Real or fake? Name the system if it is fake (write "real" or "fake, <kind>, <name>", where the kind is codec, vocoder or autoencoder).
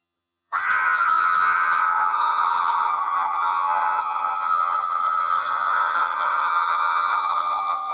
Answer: fake, vocoder, HiFi-GAN